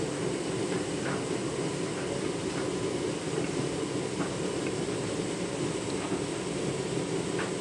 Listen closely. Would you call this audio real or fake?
real